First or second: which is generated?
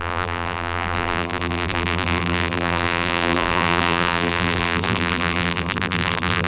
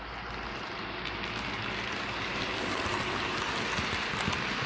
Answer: first